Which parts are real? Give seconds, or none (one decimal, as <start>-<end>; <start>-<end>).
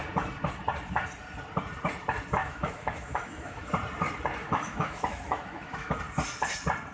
0.0-2.4; 3.7-4.4; 5.9-6.9